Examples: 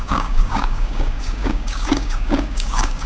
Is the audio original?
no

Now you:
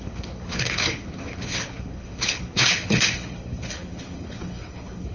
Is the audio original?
no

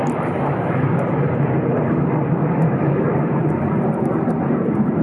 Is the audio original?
no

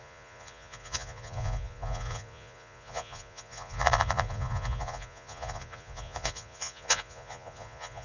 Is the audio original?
no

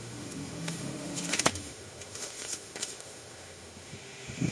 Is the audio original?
no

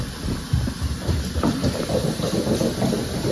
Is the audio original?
yes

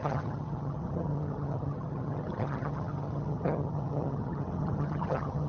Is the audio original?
no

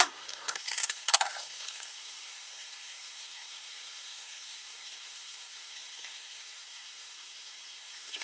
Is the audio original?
no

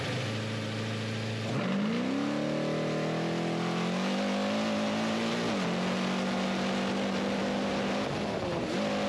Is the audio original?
yes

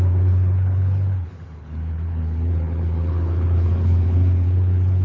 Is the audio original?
no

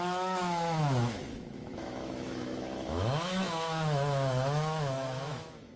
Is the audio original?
no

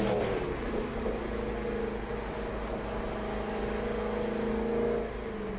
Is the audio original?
yes